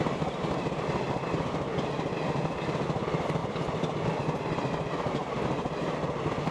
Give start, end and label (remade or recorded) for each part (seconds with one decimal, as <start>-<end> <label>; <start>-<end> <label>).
0.0-6.5 recorded